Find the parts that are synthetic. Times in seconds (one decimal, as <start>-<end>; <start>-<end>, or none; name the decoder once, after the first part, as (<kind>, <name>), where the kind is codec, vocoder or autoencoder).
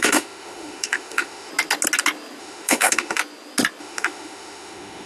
0.0-1.5 (autoencoder, DAC-VAE); 2.4-3.2; 3.8-5.1